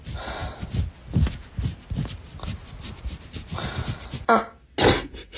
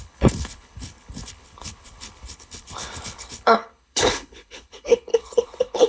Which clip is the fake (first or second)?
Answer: second